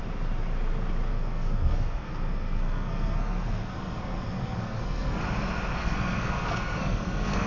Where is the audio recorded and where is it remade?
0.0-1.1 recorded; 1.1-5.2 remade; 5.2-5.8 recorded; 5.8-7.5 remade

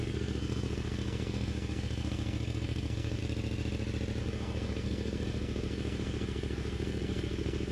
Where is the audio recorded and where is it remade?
0.0-3.2 remade; 3.2-4.2 recorded; 4.2-7.7 remade

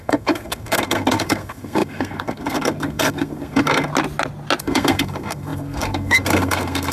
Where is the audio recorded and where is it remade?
0.0-3.9 remade; 3.9-4.6 recorded; 4.6-6.9 remade